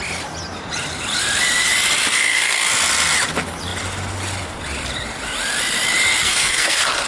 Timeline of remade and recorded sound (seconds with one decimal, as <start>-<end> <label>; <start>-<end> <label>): 0.0-2.1 recorded; 2.1-2.7 remade; 2.7-6.2 recorded; 6.2-7.1 remade

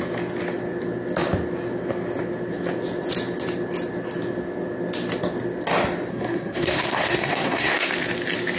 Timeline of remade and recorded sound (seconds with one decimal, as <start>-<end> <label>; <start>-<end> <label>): 0.0-6.1 recorded; 6.1-7.9 remade; 7.9-8.6 recorded

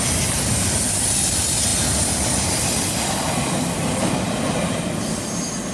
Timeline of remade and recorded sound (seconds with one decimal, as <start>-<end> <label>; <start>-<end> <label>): 0.0-5.7 recorded

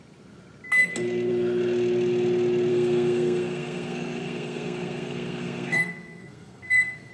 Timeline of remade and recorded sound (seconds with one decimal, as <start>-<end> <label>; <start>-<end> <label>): 0.0-2.7 recorded; 2.7-7.1 remade

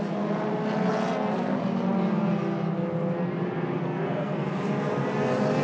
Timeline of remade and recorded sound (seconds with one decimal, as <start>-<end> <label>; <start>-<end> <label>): 0.0-3.8 recorded; 3.8-4.5 remade; 4.5-5.6 recorded